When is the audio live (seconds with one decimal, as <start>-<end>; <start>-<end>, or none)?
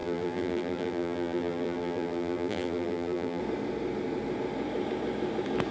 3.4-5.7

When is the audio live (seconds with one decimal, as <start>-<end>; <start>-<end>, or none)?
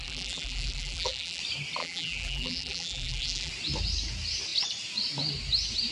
1.4-1.8; 3.5-5.9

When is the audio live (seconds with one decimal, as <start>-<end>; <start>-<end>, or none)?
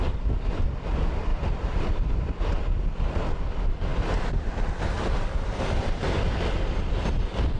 0.5-1.3; 1.9-3.9; 6.8-7.6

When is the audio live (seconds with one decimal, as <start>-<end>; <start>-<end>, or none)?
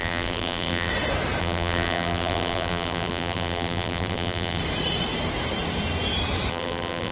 0.9-1.4; 4.6-6.5